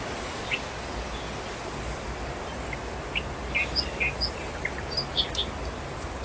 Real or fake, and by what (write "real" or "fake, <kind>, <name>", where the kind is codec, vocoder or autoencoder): real